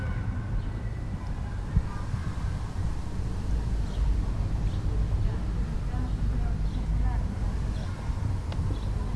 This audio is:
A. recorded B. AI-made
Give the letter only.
A